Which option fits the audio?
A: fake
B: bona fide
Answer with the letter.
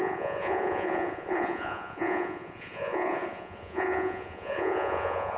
A